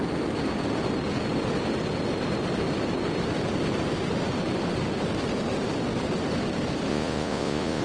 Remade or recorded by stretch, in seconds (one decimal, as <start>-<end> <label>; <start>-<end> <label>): 0.0-6.9 recorded; 6.9-7.8 remade